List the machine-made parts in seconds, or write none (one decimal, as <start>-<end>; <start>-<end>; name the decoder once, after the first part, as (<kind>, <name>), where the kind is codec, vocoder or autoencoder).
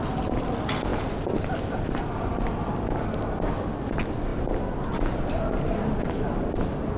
none